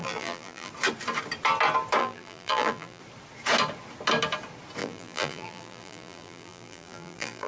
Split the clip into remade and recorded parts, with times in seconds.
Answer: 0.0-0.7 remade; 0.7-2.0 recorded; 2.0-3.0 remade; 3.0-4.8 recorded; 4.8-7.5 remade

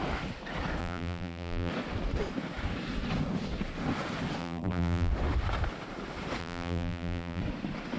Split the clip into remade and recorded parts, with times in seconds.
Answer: 0.0-0.8 recorded; 0.8-1.7 remade; 1.7-4.4 recorded; 4.4-5.1 remade; 5.1-6.4 recorded; 6.4-7.4 remade; 7.4-8.0 recorded

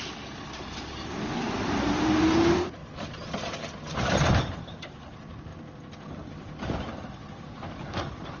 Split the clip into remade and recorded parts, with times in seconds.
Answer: 0.0-2.8 remade; 2.8-3.9 recorded; 3.9-5.5 remade; 5.5-6.1 recorded; 6.1-8.4 remade

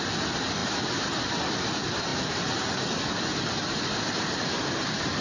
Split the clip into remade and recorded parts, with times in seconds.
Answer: 0.0-5.2 remade